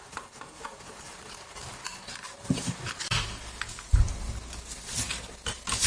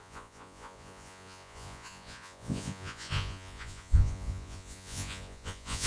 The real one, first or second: first